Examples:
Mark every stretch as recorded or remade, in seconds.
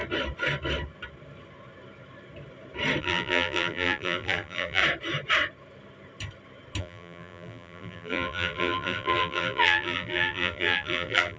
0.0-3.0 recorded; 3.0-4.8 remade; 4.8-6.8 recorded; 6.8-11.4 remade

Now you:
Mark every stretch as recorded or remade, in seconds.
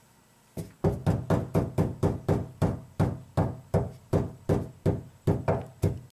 0.0-6.2 recorded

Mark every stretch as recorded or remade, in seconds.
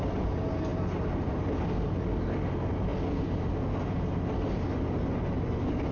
0.0-0.7 recorded; 0.7-1.9 remade; 1.9-5.9 recorded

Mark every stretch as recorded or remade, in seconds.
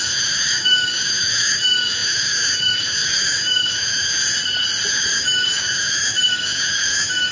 0.0-4.2 remade; 4.2-4.9 recorded; 4.9-7.3 remade